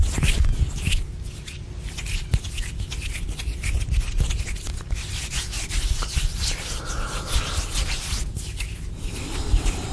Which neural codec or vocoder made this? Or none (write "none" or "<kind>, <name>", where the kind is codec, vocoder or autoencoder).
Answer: none